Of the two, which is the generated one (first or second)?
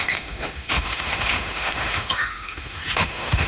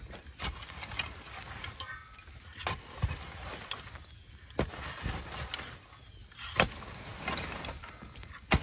first